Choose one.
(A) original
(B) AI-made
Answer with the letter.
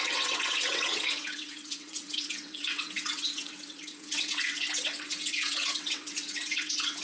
B